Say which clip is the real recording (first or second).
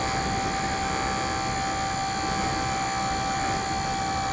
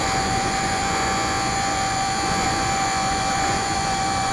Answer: first